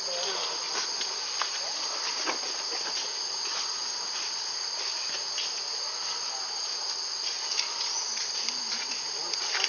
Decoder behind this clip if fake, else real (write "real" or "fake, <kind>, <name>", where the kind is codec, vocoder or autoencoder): real